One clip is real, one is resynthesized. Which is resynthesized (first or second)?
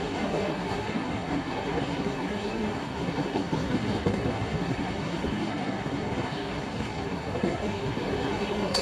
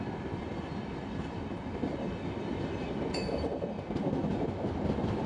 first